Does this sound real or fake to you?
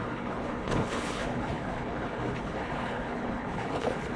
fake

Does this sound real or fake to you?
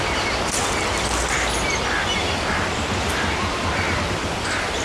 real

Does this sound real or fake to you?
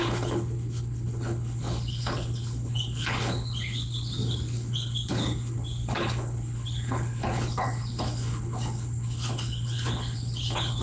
fake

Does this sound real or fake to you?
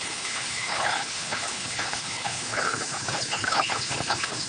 fake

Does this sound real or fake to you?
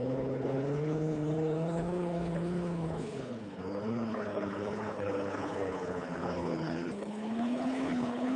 fake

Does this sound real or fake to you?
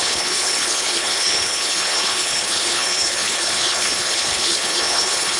fake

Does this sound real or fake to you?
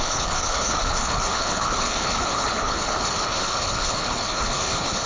fake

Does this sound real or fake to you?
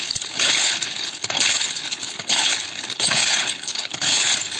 fake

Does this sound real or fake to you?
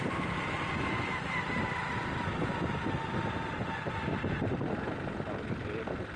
real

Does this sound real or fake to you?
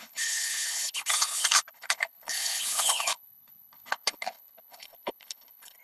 fake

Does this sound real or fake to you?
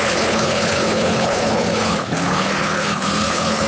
fake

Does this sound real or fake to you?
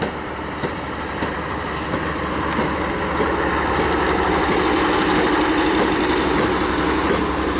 real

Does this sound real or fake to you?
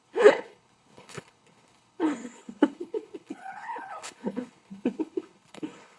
fake